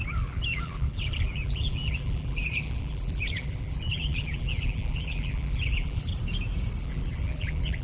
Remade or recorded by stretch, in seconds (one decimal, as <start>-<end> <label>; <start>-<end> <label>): 0.0-6.1 remade; 6.1-6.8 recorded; 6.8-7.8 remade